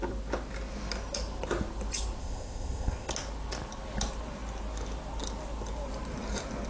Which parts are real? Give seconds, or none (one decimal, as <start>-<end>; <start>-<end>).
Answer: 0.0-2.2; 3.1-6.7